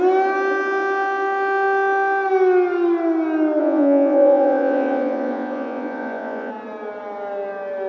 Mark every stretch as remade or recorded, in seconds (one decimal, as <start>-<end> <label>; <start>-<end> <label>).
0.0-3.6 recorded; 3.6-6.5 remade; 6.5-7.9 recorded